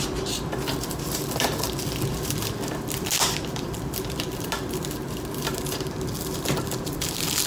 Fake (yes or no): yes